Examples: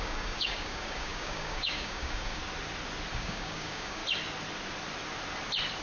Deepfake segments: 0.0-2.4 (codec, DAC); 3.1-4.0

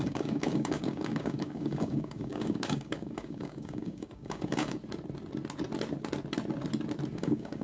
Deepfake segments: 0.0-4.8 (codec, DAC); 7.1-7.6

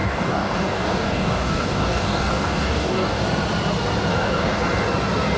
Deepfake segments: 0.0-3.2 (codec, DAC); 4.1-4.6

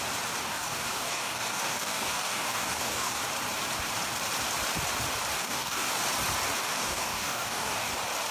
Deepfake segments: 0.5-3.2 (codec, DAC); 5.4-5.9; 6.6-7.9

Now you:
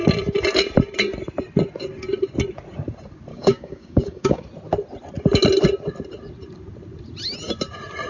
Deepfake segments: 3.3-4.4 (codec, DAC)

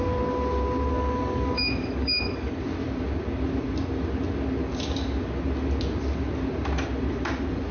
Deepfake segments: 0.9-2.6 (codec, DAC)